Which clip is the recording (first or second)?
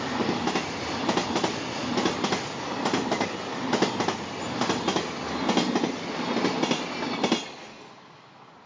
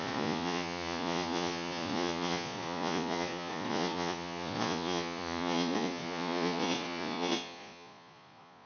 first